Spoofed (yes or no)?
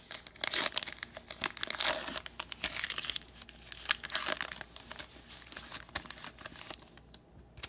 no